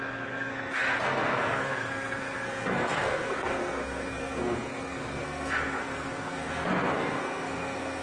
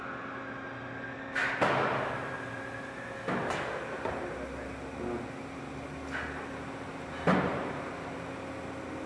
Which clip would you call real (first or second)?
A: second